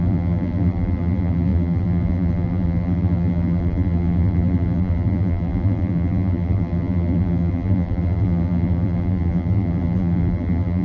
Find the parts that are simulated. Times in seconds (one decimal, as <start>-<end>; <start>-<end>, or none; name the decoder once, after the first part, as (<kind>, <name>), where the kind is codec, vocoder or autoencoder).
0.0-10.8 (vocoder, BigVGAN v2)